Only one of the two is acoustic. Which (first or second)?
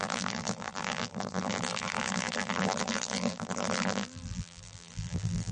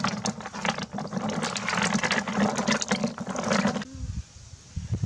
second